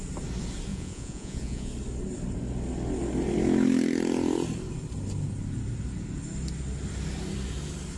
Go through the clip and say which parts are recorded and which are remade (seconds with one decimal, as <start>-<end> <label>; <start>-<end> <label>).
0.0-0.7 recorded; 0.7-1.7 remade; 1.7-8.0 recorded